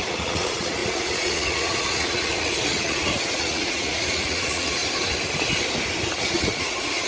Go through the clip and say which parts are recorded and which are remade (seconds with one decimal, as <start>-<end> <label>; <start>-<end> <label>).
0.0-4.8 remade; 4.8-6.2 recorded; 6.2-7.1 remade